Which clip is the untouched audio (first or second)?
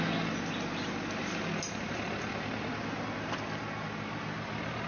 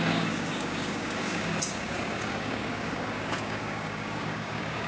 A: first